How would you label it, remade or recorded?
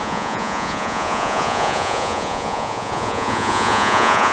remade